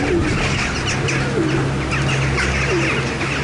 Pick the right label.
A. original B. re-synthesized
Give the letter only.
A